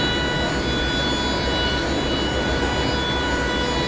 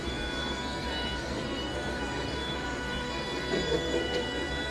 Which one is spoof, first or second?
second